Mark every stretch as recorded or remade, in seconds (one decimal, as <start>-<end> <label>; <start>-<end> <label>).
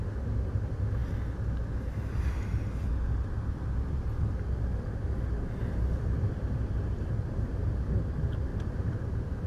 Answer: 0.0-5.6 recorded; 5.6-6.4 remade; 6.4-8.5 recorded; 8.5-9.5 remade